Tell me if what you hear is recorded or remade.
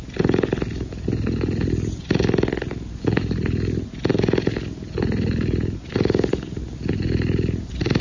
recorded